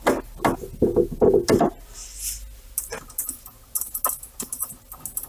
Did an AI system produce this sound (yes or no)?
no